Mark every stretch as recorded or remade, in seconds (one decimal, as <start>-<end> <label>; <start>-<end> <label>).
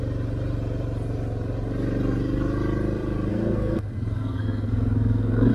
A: 0.0-3.3 recorded; 3.3-5.5 remade